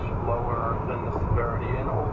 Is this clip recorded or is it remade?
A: remade